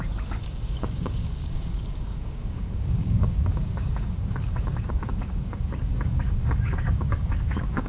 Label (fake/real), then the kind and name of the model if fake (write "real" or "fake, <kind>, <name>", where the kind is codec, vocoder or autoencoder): fake, codec, DAC